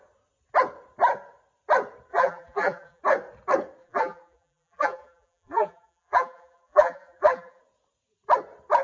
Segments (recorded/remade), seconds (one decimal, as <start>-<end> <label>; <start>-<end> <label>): 0.0-2.1 recorded; 2.1-3.0 remade; 3.0-3.8 recorded; 3.8-7.6 remade; 7.6-8.8 recorded